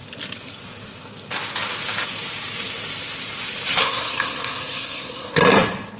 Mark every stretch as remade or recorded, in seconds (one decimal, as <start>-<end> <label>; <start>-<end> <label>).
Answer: 0.0-3.8 recorded; 3.8-5.4 remade; 5.4-6.0 recorded